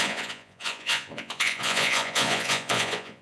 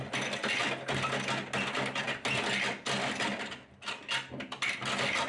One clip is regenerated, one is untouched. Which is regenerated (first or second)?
first